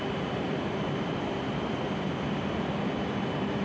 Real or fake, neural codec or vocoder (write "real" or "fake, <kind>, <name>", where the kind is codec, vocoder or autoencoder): fake, vocoder, BigVGAN v2